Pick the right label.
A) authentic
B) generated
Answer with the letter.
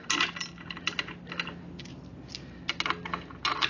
A